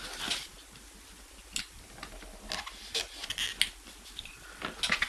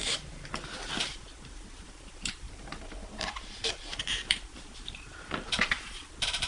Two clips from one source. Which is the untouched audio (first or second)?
first